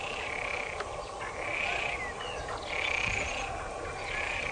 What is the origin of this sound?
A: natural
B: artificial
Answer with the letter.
A